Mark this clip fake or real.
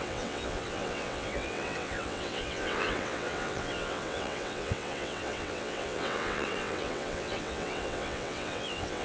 fake